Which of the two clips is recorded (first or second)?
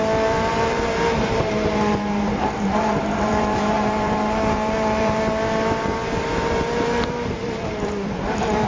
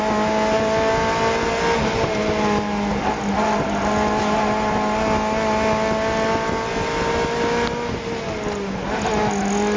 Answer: second